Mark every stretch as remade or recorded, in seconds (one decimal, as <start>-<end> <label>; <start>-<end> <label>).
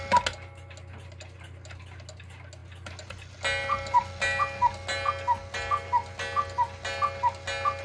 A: 0.0-7.8 recorded